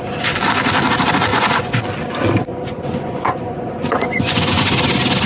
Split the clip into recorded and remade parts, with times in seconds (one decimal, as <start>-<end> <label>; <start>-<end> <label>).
0.0-1.3 recorded; 1.3-1.8 remade; 1.8-2.5 recorded; 2.5-4.6 remade; 4.6-5.3 recorded